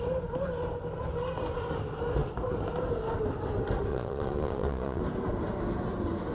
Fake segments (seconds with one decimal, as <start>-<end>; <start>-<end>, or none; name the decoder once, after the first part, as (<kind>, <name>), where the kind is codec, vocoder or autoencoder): 3.9-5.0 (vocoder, Vocos)